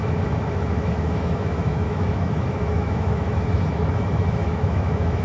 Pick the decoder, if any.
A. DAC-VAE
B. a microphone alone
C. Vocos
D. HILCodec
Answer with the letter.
A